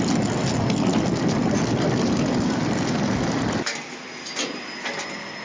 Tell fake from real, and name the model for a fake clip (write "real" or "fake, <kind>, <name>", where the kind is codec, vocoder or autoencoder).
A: real